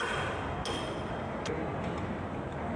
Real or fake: real